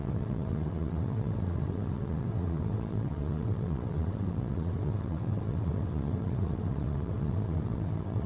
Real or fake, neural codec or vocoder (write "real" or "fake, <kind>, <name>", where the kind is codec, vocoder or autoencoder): fake, vocoder, WaveNeXt